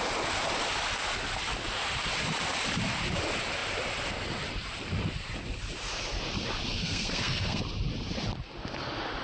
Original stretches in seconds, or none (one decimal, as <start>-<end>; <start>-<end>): 0.0-6.7; 7.6-9.2